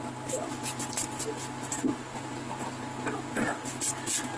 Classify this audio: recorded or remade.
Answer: recorded